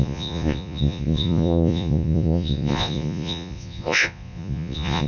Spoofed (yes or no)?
yes